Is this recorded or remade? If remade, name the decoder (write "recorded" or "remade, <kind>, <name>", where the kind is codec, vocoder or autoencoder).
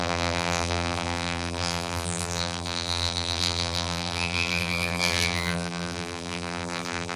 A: remade, vocoder, BigVGAN v2